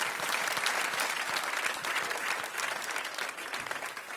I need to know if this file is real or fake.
real